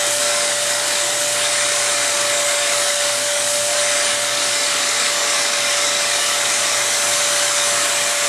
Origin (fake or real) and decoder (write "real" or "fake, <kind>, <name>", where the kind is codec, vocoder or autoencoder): fake, codec, DAC